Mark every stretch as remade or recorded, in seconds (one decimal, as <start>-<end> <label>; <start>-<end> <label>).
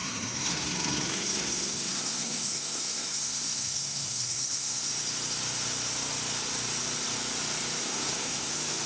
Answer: 0.0-4.9 remade; 4.9-7.8 recorded; 7.8-8.5 remade; 8.5-8.9 recorded